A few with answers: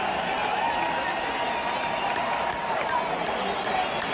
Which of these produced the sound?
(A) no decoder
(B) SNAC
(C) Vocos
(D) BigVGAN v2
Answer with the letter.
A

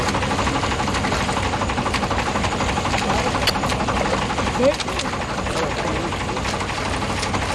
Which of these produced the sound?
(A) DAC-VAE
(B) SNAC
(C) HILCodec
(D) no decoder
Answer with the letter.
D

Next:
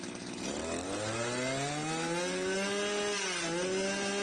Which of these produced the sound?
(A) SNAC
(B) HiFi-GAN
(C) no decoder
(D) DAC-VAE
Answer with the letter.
C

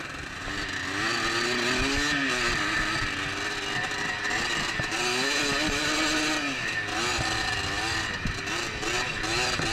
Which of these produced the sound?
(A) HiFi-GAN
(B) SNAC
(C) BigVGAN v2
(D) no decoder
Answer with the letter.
D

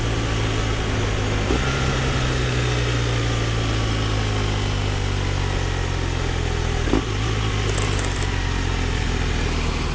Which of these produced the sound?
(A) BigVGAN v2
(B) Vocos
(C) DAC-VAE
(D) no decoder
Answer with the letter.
D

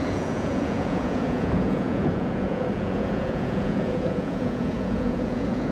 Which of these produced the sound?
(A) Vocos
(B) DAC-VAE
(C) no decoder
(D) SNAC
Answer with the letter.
A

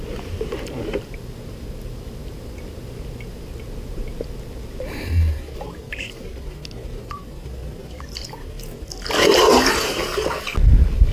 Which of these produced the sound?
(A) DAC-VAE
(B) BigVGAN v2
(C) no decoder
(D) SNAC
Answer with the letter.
C